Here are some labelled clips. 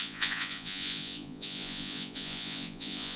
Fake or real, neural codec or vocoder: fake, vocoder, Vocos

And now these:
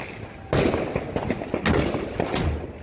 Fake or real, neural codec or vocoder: real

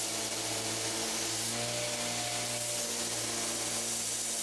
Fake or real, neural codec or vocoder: real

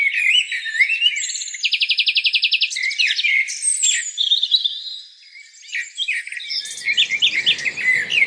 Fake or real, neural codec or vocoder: real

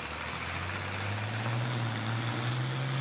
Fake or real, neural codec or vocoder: real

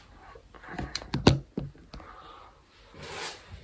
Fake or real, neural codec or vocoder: real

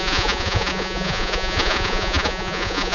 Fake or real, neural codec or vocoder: fake, vocoder, Vocos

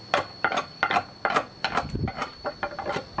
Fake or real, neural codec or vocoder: real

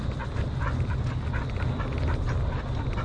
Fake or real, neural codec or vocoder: real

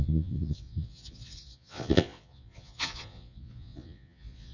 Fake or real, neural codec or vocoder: fake, vocoder, Vocos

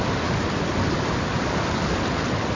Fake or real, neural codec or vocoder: real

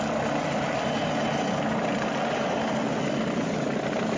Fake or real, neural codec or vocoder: real